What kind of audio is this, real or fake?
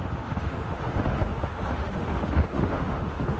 fake